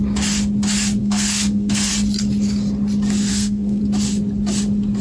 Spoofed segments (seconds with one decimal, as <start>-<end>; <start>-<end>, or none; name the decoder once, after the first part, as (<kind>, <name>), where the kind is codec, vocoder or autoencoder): 1.0-1.9 (codec, SNAC); 3.3-3.8